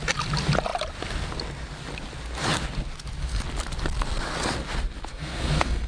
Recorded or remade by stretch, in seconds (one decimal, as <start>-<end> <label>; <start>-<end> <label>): 0.0-5.1 recorded; 5.1-5.9 remade